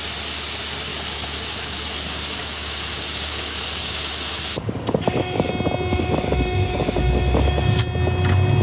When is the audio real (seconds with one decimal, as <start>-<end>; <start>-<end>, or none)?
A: 0.0-0.9; 5.5-5.9; 7.8-8.6